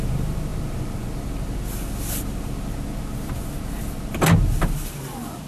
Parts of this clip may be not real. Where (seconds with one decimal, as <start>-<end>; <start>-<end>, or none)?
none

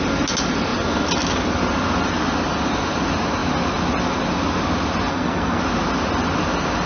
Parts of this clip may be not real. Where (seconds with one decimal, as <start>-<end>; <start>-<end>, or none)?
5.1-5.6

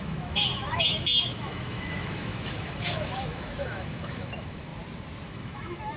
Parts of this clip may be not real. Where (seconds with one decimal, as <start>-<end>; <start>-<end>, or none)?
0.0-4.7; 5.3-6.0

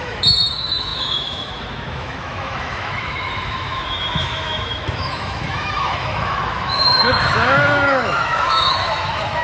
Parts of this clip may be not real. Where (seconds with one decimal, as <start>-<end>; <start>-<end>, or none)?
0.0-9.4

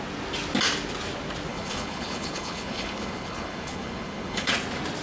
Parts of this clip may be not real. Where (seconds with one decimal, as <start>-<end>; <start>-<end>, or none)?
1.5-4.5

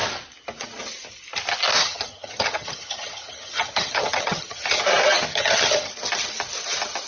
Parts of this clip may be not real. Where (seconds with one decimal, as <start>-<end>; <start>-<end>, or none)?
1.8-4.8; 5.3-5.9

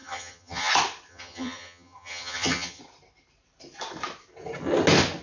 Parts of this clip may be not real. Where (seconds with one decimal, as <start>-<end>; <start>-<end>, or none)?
0.0-0.7; 1.1-2.8

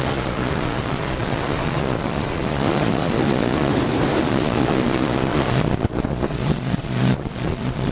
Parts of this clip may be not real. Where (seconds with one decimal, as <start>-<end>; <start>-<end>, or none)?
0.0-3.7; 4.2-7.9